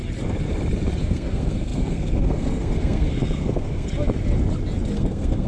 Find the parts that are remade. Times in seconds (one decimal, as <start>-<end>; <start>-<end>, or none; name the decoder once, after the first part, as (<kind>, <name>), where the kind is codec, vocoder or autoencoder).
1.0-3.9 (codec, SNAC); 4.9-5.5